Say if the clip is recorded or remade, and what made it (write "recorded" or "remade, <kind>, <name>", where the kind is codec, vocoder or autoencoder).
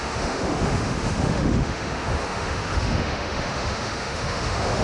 remade, autoencoder, DAC-VAE